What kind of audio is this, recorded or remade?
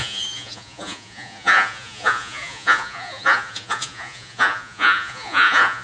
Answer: remade